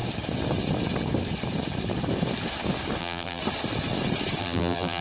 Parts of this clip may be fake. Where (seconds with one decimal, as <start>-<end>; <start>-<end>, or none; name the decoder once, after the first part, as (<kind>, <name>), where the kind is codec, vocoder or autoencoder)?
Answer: 3.0-3.4 (vocoder, BigVGAN v2); 4.4-5.0